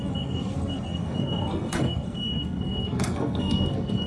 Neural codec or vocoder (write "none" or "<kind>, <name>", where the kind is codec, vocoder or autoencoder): codec, SNAC